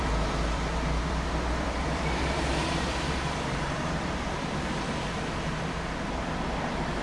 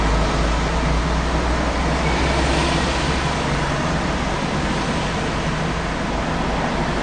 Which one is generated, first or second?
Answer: first